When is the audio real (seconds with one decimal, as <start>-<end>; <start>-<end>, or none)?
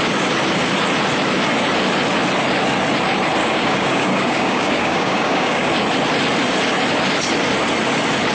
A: 0.0-3.4; 5.7-8.3